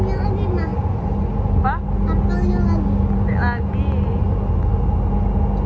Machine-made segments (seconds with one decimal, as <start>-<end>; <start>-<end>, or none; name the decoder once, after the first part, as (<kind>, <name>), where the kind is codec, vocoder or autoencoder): none